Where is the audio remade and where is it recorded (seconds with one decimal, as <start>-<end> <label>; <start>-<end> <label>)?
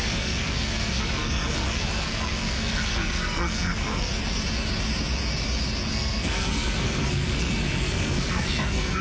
0.0-4.1 remade; 4.1-5.9 recorded; 5.9-9.0 remade